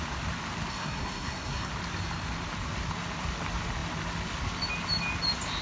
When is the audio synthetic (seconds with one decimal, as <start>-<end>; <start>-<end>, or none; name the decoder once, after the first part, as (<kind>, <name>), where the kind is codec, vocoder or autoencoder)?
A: 0.7-1.7 (codec, SNAC)